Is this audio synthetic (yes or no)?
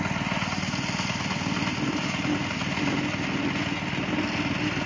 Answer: no